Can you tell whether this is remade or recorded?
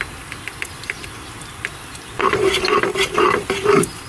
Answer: recorded